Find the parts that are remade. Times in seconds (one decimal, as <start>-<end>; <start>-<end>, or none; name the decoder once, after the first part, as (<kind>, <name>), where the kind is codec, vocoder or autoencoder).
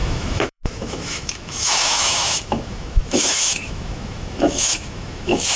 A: 0.0-5.6 (autoencoder, DAC-VAE)